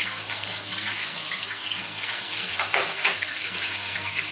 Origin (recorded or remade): remade